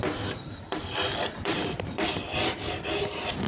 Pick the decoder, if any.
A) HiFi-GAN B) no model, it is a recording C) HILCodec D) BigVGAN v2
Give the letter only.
D